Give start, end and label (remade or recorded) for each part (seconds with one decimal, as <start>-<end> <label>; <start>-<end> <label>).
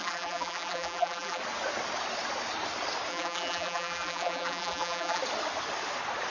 0.0-1.4 remade; 1.4-3.1 recorded; 3.1-5.2 remade; 5.2-6.3 recorded